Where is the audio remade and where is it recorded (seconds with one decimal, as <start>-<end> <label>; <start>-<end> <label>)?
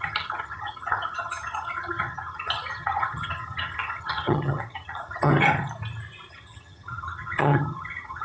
0.0-5.3 remade; 5.3-6.3 recorded; 6.3-8.2 remade